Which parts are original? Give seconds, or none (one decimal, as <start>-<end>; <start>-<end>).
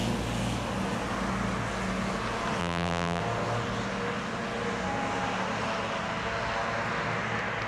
0.0-2.6; 3.2-7.7